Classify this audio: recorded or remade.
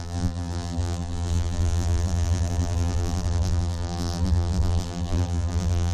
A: remade